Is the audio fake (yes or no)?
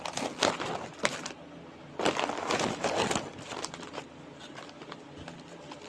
no